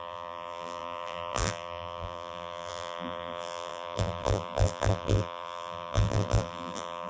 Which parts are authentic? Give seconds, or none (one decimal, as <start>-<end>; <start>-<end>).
none